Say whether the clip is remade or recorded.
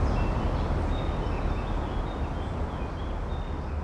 recorded